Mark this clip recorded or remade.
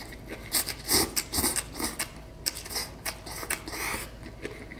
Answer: recorded